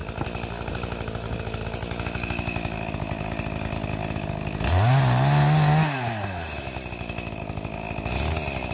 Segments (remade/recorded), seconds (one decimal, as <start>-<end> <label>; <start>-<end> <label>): 0.0-8.7 recorded

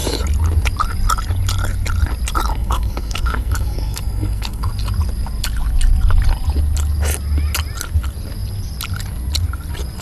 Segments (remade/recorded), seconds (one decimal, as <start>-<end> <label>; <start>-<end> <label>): 0.0-2.5 recorded; 2.5-4.7 remade; 4.7-10.0 recorded

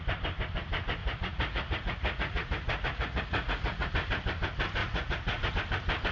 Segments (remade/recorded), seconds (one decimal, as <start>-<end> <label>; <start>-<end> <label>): 0.0-1.0 recorded; 1.0-3.9 remade; 3.9-4.8 recorded; 4.8-5.5 remade; 5.5-6.1 recorded

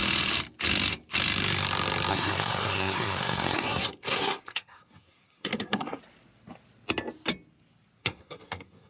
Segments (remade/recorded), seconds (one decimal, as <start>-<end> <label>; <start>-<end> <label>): 0.0-2.1 recorded; 2.1-6.0 remade; 6.0-8.0 recorded; 8.0-8.9 remade

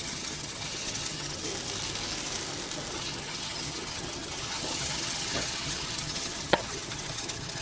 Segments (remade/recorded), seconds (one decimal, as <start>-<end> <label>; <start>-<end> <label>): 0.0-1.5 remade; 1.5-2.9 recorded; 2.9-7.6 remade

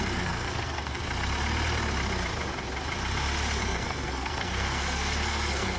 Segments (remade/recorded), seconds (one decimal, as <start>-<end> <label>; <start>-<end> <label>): 0.0-1.0 remade; 1.0-3.6 recorded; 3.6-5.8 remade

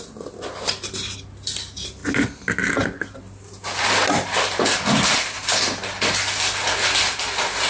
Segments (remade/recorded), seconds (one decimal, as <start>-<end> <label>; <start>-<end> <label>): 0.0-7.7 recorded